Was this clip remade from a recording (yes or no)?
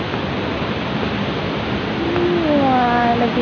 no